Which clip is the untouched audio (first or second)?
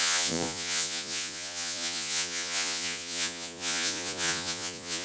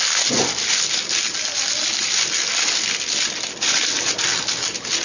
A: second